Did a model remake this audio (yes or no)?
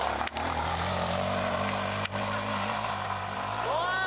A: yes